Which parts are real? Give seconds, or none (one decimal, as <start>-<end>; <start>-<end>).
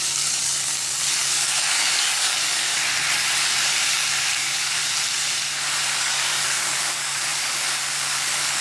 0.4-1.2; 2.7-4.1; 4.8-6.0